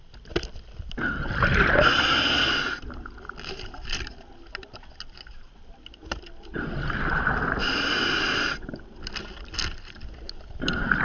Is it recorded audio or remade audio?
recorded